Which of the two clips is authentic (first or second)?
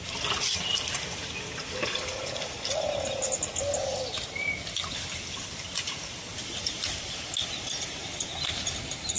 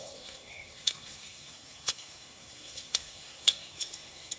first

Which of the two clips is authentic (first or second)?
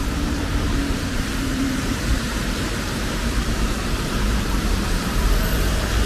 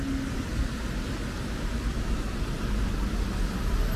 second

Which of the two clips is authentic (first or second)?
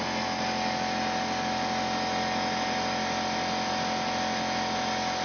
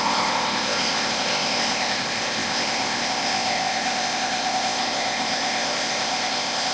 first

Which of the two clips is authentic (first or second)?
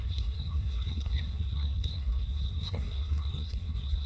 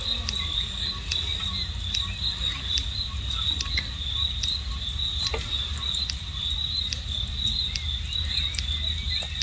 second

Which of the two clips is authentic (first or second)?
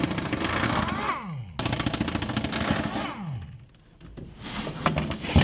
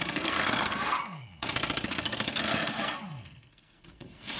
first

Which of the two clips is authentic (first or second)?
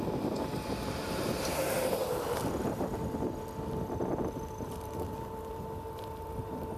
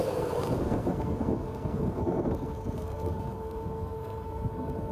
first